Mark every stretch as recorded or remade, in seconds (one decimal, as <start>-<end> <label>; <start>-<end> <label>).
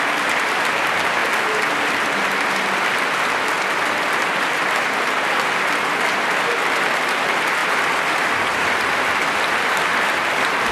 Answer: 0.0-7.6 recorded; 7.6-8.9 remade; 8.9-10.7 recorded